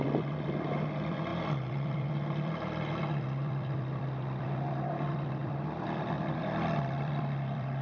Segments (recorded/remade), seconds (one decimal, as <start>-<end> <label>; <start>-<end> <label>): 0.0-7.8 remade